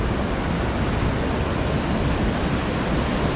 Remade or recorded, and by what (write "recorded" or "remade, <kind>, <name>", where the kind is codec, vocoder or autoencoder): recorded